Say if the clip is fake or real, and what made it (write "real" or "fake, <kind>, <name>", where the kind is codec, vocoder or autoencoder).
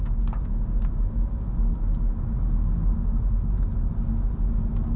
real